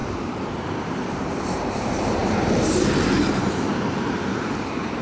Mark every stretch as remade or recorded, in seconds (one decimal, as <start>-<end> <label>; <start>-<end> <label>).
0.0-2.2 remade; 2.2-3.9 recorded; 3.9-5.0 remade